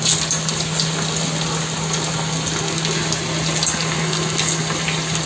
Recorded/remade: recorded